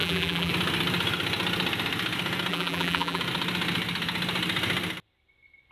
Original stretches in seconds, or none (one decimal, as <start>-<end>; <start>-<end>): 0.5-2.5; 3.2-5.7